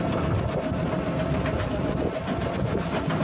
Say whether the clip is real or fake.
real